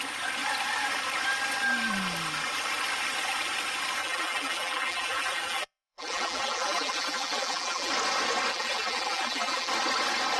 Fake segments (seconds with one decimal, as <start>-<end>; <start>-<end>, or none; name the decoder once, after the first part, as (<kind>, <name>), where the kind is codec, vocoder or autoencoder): 4.0-7.9 (vocoder, BigVGAN v2); 8.5-9.7